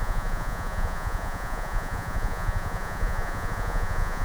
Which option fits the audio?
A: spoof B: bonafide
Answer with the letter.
A